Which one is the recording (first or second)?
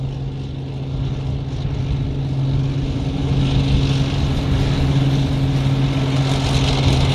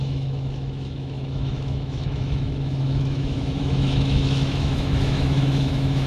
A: first